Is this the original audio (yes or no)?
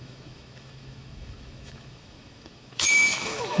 no